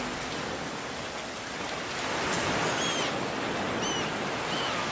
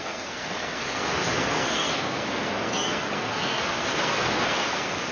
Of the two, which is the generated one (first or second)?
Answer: second